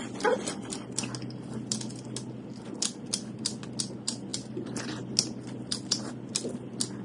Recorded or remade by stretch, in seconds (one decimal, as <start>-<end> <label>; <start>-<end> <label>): 0.0-7.0 recorded